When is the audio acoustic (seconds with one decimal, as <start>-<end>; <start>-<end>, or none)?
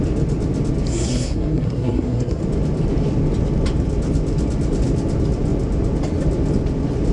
0.0-0.9; 2.4-7.1